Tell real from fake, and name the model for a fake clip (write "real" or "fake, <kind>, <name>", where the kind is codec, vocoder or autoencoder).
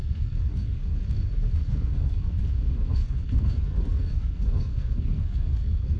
fake, codec, SNAC